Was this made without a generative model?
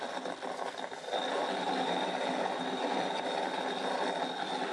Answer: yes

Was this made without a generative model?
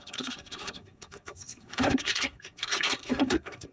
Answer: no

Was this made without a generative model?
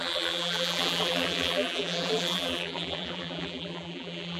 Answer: no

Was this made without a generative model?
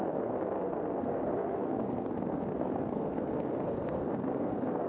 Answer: no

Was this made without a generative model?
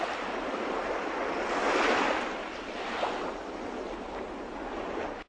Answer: yes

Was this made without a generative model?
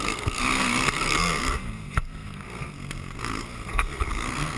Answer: no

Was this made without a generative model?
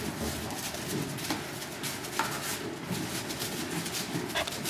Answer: yes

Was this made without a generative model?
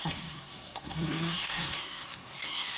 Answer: no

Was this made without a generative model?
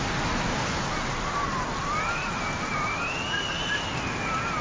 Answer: yes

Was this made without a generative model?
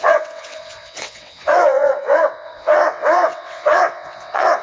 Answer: no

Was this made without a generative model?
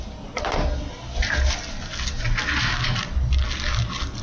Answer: yes